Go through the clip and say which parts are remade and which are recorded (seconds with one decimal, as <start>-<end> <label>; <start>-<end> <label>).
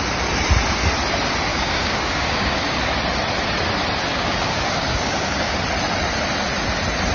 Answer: 0.0-1.5 recorded; 1.5-2.9 remade; 2.9-4.1 recorded; 4.1-5.6 remade; 5.6-7.1 recorded